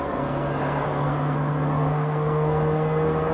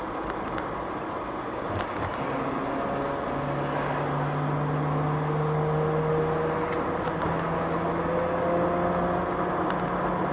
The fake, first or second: first